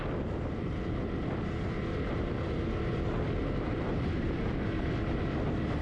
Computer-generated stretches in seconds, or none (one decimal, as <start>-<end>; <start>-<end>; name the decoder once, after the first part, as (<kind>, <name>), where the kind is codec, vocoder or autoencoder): none

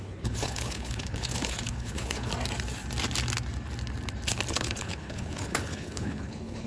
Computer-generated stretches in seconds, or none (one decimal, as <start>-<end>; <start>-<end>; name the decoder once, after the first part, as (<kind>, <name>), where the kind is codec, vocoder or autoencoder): 0.0-2.3 (codec, HILCodec); 4.5-6.7

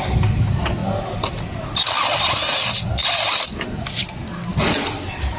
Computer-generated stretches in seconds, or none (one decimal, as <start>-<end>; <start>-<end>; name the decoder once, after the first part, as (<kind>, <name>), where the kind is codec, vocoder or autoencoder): none

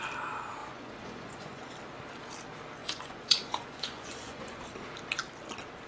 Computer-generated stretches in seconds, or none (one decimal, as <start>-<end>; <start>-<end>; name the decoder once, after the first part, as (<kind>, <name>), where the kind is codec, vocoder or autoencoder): 0.6-1.6 (vocoder, Vocos); 2.8-4.6

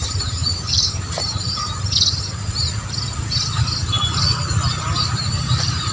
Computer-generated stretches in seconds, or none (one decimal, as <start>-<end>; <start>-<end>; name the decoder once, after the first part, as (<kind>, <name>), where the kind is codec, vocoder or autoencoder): 0.0-1.6 (vocoder, BigVGAN v2); 5.1-5.9

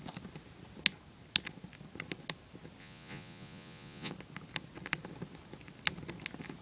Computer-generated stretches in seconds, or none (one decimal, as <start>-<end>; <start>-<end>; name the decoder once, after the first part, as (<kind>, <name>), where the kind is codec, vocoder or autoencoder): 2.8-4.1 (vocoder, Vocos)